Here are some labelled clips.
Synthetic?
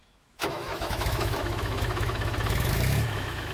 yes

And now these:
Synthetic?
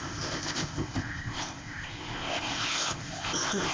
yes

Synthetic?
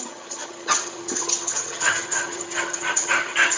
yes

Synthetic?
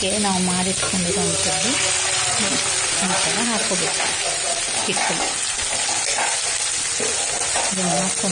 no